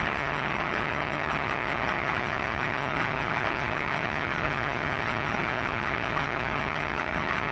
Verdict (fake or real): fake